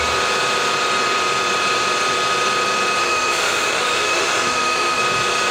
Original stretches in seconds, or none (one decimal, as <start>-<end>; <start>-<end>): 0.0-3.0; 5.0-5.5